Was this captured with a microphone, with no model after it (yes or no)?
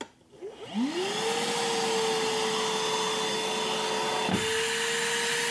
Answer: yes